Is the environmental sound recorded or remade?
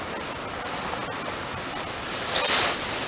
recorded